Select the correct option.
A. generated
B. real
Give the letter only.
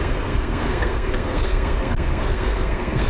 A